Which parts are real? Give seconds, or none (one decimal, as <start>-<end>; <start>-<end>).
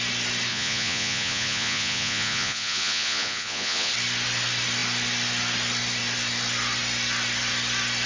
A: 0.0-0.5; 3.9-8.1